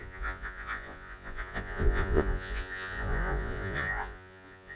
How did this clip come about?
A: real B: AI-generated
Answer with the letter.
B